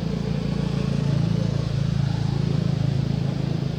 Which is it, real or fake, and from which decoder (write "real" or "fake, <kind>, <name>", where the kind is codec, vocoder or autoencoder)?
real